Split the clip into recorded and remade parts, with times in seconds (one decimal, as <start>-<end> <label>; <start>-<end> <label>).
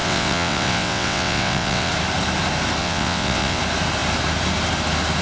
0.0-1.9 remade; 1.9-2.8 recorded; 2.8-3.6 remade; 3.6-5.2 recorded